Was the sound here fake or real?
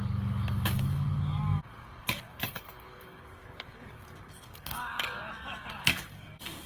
fake